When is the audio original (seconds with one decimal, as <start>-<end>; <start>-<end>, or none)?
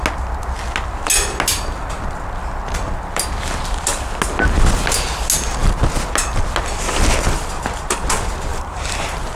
0.0-8.5